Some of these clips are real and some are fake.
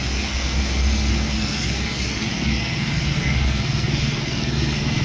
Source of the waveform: fake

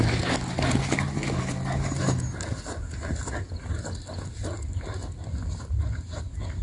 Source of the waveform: real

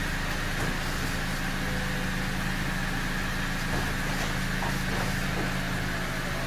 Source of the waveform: real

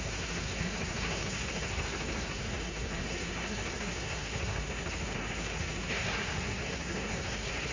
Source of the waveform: fake